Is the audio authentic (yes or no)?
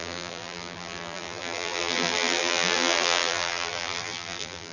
no